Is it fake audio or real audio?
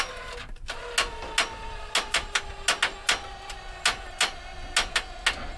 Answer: real